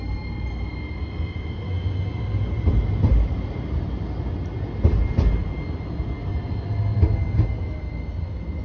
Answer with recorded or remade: recorded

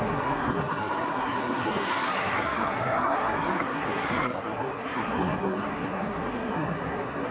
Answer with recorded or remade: remade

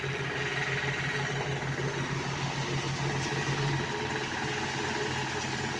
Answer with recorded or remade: recorded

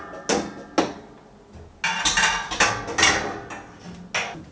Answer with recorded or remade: recorded